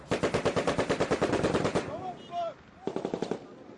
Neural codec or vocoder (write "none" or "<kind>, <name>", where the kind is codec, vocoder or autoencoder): none